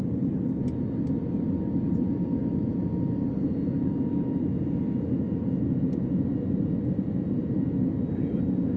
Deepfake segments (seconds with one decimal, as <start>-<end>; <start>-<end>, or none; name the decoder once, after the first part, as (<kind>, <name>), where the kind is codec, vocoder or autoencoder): none